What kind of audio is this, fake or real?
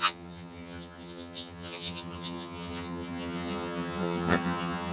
fake